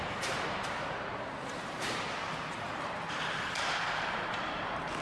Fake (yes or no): yes